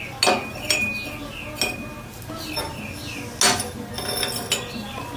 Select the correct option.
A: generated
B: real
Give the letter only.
B